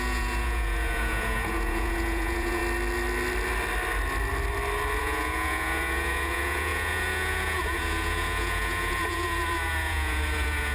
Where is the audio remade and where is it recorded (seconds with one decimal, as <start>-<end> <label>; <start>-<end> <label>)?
0.0-2.6 remade; 2.6-5.0 recorded; 5.0-10.7 remade

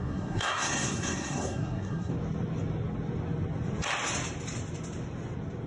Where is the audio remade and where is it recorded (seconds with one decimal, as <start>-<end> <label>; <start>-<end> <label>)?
0.0-2.1 remade; 2.1-5.7 recorded

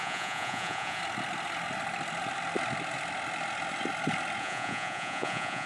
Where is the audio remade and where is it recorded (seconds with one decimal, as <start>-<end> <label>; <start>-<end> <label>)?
0.0-1.0 remade; 1.0-4.4 recorded; 4.4-5.7 remade

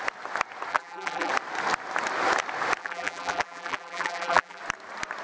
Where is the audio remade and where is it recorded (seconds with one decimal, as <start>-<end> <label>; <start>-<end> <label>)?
0.0-0.7 recorded; 0.7-1.3 remade; 1.3-2.8 recorded; 2.8-4.6 remade; 4.6-5.2 recorded

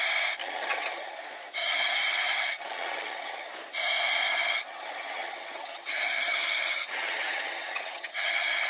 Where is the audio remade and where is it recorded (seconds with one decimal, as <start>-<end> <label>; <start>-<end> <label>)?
0.0-0.4 recorded; 0.4-1.2 remade; 1.2-1.6 recorded; 1.6-3.5 remade; 3.5-4.2 recorded; 4.2-8.7 remade